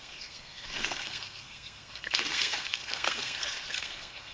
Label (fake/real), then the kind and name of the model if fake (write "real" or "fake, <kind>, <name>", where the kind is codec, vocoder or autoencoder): fake, codec, SNAC